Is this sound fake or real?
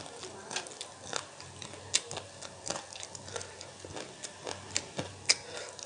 real